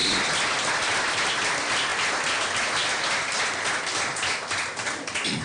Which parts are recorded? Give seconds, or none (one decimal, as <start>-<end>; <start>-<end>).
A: 0.0-5.4